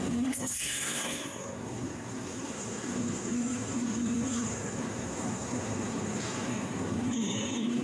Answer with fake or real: fake